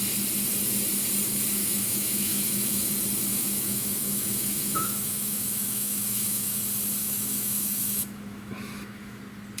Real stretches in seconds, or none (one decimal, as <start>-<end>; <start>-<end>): 0.0-1.6; 2.9-3.3; 6.6-7.0; 9.2-9.6